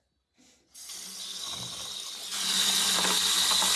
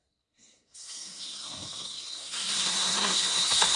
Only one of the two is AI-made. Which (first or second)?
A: second